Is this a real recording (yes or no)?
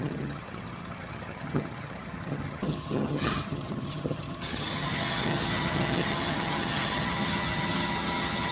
no